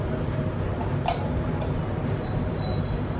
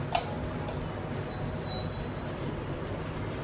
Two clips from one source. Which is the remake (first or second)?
first